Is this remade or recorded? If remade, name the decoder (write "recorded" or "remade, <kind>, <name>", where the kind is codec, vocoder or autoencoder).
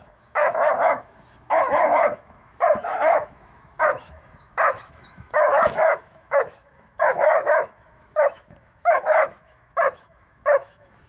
remade, autoencoder, DAC-VAE